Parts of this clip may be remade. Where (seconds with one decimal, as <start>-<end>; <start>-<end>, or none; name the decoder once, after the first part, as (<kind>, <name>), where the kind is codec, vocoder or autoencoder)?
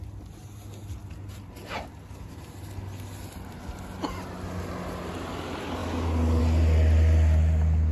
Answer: none